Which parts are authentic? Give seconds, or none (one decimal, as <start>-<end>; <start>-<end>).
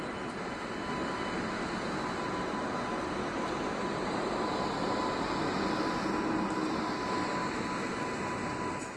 0.0-2.9; 4.6-7.4; 8.1-9.0